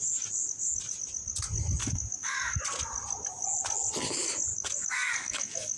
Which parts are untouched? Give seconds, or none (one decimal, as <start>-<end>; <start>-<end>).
0.0-1.8; 2.6-4.5